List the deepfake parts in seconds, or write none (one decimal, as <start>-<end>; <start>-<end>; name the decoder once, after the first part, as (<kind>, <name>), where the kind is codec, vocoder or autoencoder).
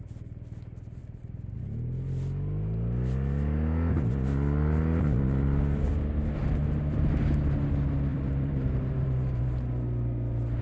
8.1-9.4 (vocoder, BigVGAN v2)